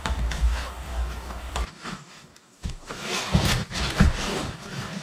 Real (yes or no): no